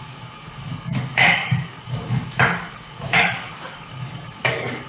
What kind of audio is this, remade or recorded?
remade